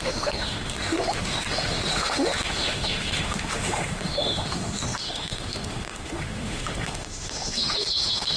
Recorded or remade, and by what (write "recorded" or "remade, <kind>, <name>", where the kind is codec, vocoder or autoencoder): remade, autoencoder, DAC-VAE